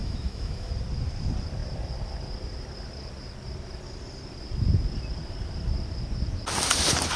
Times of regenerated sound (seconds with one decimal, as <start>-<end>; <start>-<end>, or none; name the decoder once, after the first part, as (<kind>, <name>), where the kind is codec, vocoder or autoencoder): 0.0-0.7 (autoencoder, DAC-VAE)